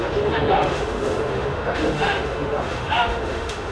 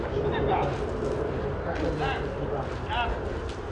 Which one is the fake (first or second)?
first